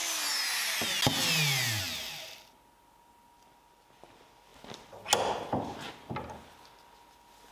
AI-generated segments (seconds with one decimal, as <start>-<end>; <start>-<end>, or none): none